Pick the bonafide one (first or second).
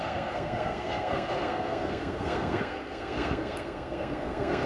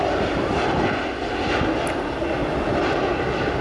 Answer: second